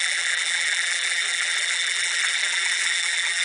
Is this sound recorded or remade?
remade